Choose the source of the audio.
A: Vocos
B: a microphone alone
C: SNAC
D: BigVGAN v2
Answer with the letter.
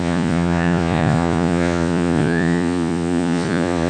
A